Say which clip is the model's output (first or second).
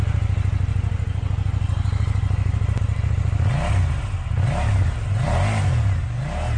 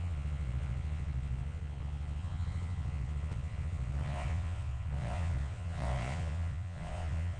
second